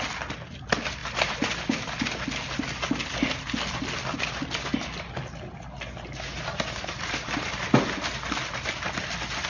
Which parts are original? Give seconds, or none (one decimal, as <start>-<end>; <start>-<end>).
0.0-9.5